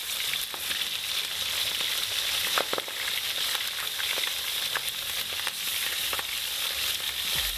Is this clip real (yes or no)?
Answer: yes